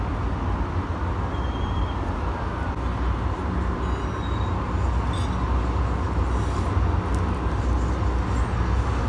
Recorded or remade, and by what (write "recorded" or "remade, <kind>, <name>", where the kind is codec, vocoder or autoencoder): recorded